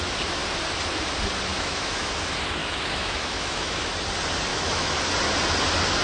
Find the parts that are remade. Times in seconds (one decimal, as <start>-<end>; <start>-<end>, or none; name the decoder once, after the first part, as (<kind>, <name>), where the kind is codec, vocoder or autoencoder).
1.5-2.1 (autoencoder, DAC-VAE); 2.6-3.9; 4.5-5.0